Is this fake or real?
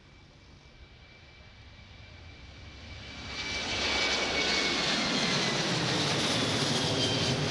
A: real